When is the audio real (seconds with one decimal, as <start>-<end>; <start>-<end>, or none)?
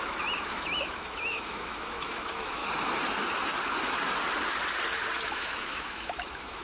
2.6-5.2